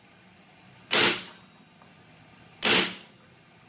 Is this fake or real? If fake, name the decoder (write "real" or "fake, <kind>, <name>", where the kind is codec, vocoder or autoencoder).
real